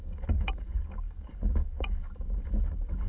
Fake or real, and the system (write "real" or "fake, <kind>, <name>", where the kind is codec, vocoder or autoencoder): fake, codec, DAC